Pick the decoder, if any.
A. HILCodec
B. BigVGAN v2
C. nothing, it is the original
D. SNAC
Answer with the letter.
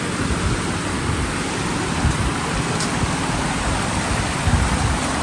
C